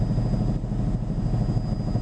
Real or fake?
real